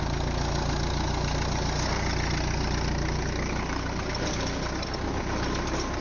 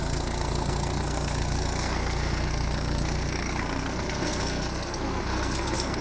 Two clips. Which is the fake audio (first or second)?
second